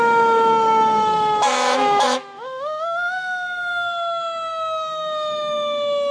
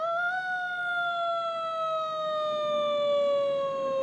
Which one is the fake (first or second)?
first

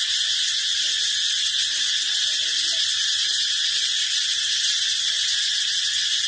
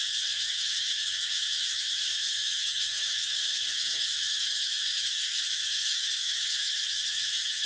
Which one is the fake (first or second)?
second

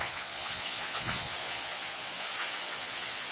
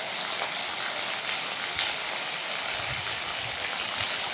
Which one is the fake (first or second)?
first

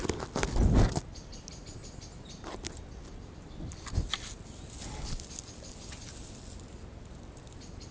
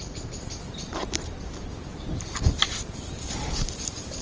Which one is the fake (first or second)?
second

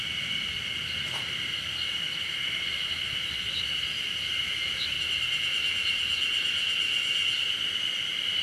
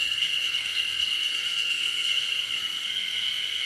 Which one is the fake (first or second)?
second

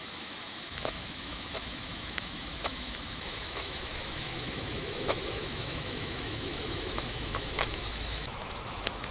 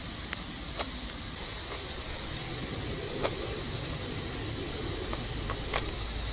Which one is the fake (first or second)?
first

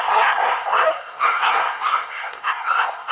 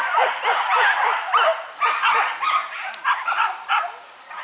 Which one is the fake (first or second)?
first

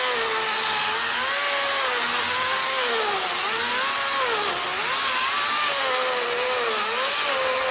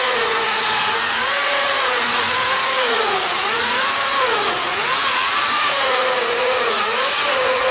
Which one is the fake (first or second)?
second